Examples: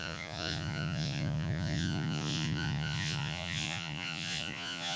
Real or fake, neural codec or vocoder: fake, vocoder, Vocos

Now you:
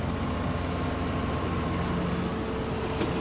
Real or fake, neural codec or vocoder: real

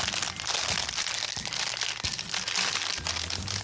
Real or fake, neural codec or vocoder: real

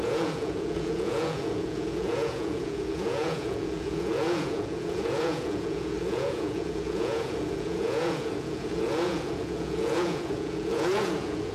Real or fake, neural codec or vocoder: fake, vocoder, Vocos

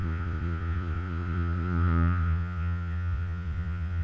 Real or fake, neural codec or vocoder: fake, vocoder, Vocos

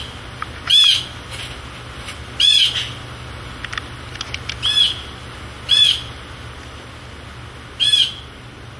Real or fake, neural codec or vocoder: real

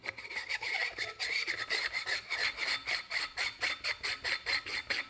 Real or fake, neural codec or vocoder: real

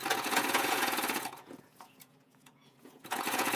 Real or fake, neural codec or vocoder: fake, vocoder, Vocos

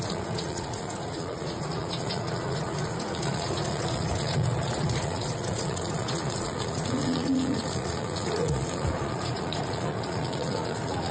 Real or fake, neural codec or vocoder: fake, vocoder, Vocos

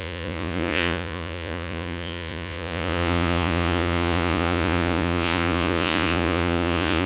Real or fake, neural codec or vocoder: fake, vocoder, Vocos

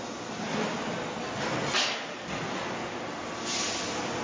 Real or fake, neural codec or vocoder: real